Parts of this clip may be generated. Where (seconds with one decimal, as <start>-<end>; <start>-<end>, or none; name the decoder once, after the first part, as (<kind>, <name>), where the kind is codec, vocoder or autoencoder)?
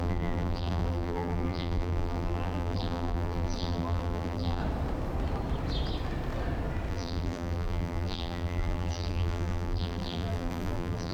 0.0-4.6 (vocoder, BigVGAN v2); 6.9-11.1